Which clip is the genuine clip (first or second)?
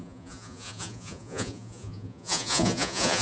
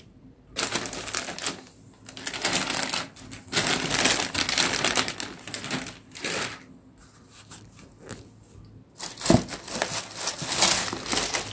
second